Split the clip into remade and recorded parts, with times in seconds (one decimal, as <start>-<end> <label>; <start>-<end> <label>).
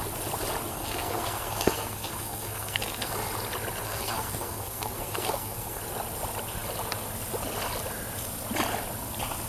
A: 0.0-0.7 recorded; 0.7-3.1 remade; 3.1-3.8 recorded; 3.8-5.8 remade; 5.8-9.5 recorded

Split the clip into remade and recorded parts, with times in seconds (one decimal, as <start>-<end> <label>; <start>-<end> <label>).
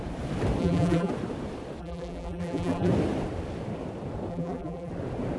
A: 0.0-0.6 recorded; 0.6-1.1 remade; 1.1-1.8 recorded; 1.8-2.9 remade; 2.9-4.3 recorded; 4.3-4.9 remade; 4.9-5.4 recorded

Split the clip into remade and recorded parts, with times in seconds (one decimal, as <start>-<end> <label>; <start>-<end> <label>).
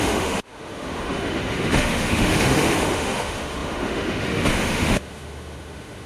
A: 0.0-6.1 remade